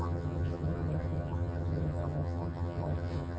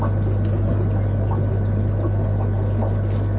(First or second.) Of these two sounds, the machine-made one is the first